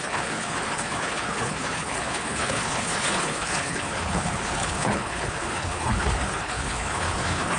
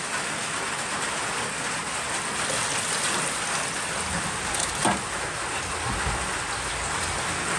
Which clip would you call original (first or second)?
second